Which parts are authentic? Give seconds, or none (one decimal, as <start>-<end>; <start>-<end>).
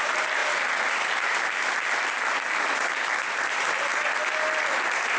0.4-3.5; 3.9-4.4